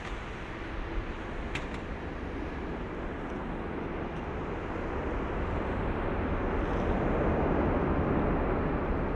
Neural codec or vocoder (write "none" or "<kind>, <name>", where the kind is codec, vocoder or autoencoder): none